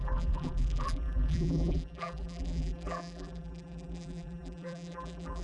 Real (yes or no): no